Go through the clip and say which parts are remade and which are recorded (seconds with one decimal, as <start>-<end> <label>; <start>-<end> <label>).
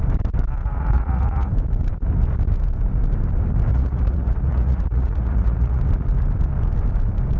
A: 0.0-0.6 recorded; 0.6-1.5 remade; 1.5-3.7 recorded; 3.7-5.8 remade; 5.8-7.4 recorded